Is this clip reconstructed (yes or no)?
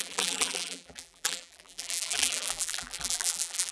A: yes